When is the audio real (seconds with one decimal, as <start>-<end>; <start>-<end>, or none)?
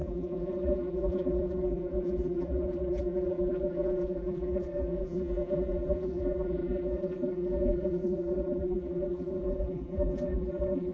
none